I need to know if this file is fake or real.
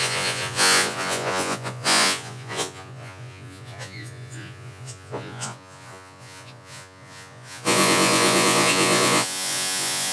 fake